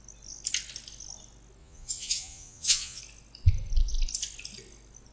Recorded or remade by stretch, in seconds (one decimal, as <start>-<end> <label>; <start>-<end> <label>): 0.0-1.6 recorded; 1.6-3.0 remade; 3.0-5.1 recorded

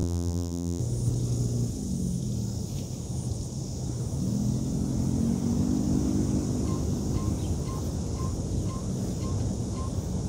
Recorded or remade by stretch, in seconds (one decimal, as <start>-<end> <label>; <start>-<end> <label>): 0.0-0.8 remade; 0.8-10.3 recorded

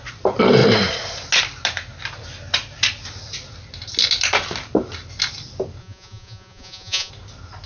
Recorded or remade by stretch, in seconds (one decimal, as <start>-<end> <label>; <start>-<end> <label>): 0.0-5.8 recorded; 5.8-7.1 remade; 7.1-7.7 recorded

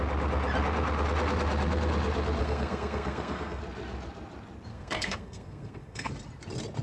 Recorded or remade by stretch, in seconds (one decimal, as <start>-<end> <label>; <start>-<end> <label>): 0.0-2.4 recorded; 2.4-3.6 remade; 3.6-4.7 recorded; 4.7-6.1 remade; 6.1-6.8 recorded

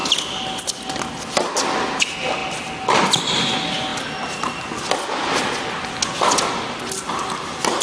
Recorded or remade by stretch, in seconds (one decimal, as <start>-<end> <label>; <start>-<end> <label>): 0.0-7.8 recorded